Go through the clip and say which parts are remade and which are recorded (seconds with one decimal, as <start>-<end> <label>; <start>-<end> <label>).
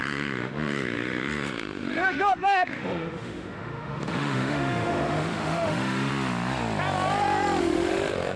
0.0-6.1 remade; 6.1-7.6 recorded; 7.6-8.4 remade